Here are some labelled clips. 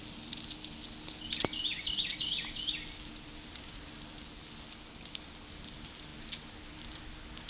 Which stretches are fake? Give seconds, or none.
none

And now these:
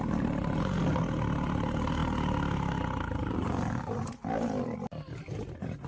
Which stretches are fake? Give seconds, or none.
none

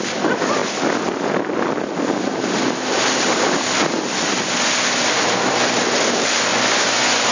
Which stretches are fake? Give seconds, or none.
6.5-7.3 (vocoder, Vocos)

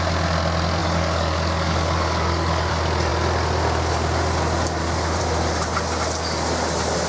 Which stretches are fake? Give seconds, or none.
0.8-2.7 (codec, DAC)